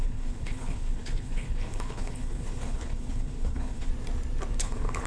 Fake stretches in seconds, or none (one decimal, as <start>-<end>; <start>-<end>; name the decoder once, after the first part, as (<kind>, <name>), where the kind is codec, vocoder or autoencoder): 0.0-3.9 (codec, HILCodec); 4.6-5.1